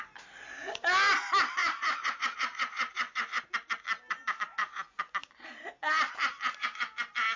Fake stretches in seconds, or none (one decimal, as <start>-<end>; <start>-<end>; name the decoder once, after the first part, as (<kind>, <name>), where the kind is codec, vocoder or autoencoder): 1.6-3.4 (vocoder, Vocos); 4.6-5.2